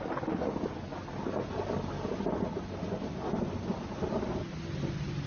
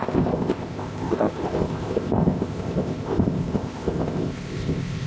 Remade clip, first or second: second